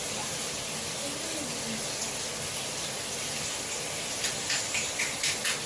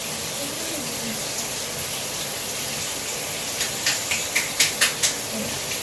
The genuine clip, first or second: first